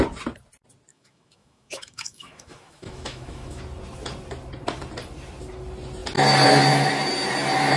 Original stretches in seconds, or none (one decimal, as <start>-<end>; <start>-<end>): 0.0-0.9; 3.6-7.8